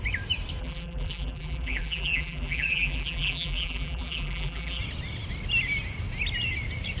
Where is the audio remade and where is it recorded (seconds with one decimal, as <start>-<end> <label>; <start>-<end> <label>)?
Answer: 0.0-0.6 recorded; 0.6-4.8 remade; 4.8-7.0 recorded